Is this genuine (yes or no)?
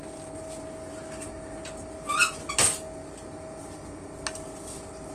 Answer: yes